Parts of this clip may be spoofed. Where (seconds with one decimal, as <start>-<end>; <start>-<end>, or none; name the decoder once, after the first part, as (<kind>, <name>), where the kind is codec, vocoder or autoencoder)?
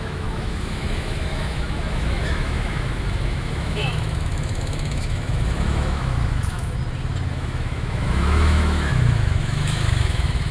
0.0-6.8 (autoencoder, DAC-VAE); 7.3-10.5